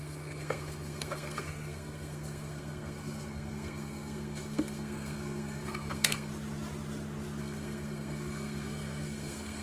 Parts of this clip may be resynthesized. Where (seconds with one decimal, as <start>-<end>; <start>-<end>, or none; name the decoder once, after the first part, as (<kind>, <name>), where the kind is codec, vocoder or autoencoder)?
0.0-6.3 (codec, SNAC); 7.4-9.6